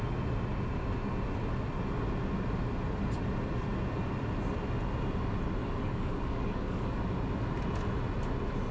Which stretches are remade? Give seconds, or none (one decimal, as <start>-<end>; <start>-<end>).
5.6-7.0